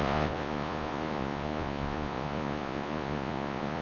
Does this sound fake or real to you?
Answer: fake